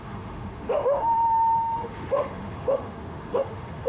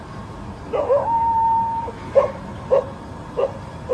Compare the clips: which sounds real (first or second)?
second